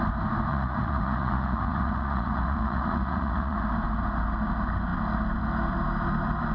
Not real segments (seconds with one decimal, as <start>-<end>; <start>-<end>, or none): 0.5-3.6